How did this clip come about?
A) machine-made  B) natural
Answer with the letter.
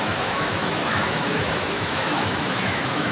A